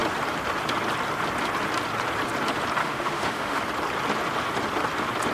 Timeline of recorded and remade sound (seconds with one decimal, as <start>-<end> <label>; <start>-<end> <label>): 0.0-2.8 recorded; 2.8-3.6 remade; 3.6-5.3 recorded